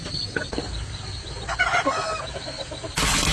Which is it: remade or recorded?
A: recorded